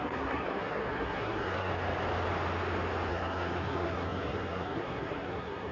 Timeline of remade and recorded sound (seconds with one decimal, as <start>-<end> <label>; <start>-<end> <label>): 0.0-1.7 remade; 1.7-3.1 recorded; 3.1-5.7 remade